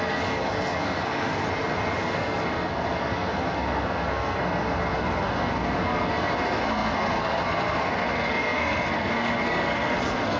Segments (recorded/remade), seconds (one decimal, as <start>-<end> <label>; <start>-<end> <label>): 0.0-1.4 remade; 1.4-2.0 recorded; 2.0-10.4 remade